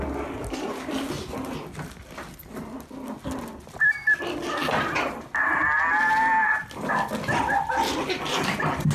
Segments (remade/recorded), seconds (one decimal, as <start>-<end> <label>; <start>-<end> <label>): 0.0-8.9 recorded